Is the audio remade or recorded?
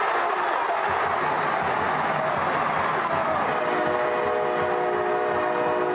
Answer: recorded